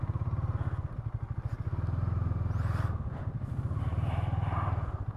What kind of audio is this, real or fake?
real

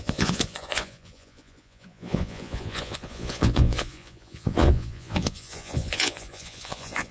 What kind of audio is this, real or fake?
fake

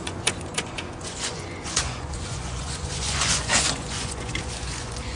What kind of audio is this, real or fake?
fake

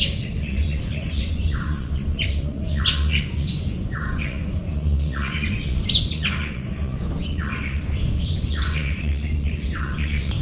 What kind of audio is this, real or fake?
fake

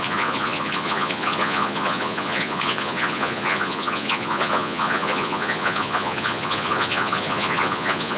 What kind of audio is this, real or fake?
fake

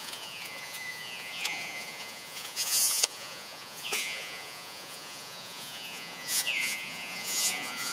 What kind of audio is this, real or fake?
fake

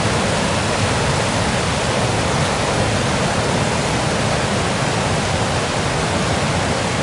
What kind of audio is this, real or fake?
real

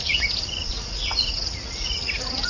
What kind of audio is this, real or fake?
fake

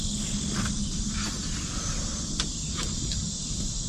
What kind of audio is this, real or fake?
real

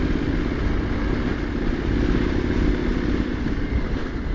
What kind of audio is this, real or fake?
real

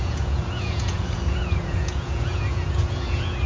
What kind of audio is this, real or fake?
fake